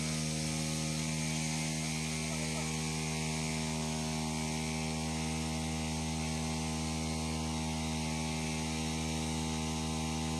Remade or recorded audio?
recorded